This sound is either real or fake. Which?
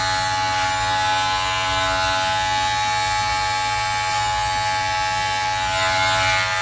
real